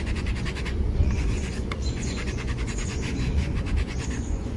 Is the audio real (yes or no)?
no